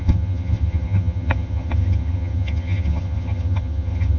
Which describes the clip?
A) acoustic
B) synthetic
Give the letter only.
B